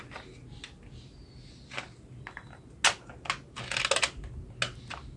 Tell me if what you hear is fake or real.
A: real